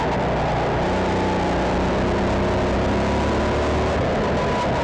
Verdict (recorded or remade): recorded